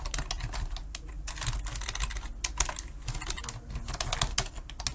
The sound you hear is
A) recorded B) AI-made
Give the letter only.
A